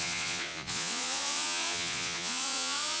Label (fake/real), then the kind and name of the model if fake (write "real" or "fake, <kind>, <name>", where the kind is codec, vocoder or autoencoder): fake, vocoder, Vocos